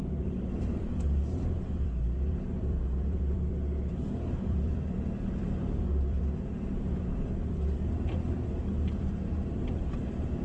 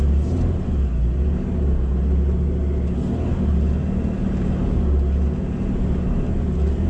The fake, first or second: first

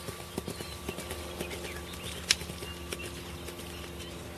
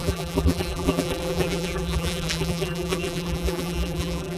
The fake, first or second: second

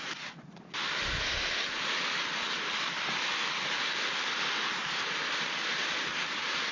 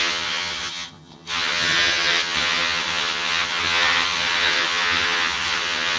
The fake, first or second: second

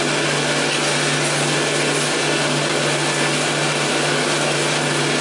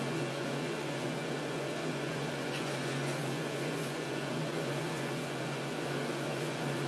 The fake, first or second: second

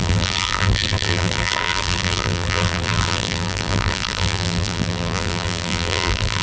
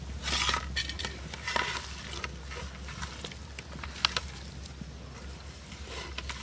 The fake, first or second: first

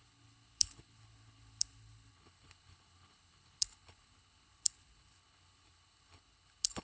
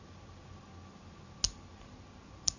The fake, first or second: first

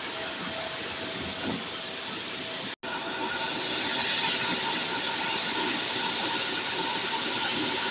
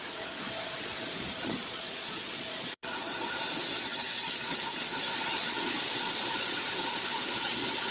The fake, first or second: second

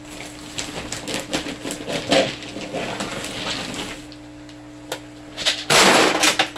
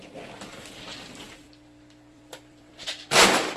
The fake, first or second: second